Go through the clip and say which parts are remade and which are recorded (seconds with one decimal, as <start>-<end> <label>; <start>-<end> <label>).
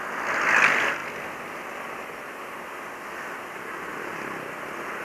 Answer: 0.0-5.0 recorded